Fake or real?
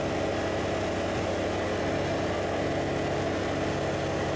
real